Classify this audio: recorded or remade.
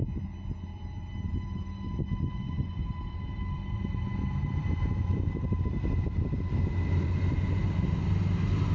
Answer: recorded